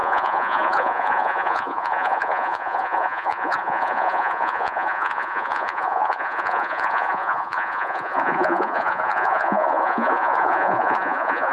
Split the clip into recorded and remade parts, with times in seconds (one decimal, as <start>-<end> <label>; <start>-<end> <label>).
0.0-11.5 remade